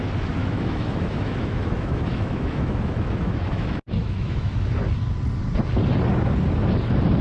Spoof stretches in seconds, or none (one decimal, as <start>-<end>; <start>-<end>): 0.4-4.7